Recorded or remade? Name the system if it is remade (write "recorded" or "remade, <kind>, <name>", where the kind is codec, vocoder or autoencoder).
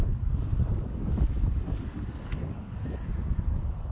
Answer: remade, codec, DAC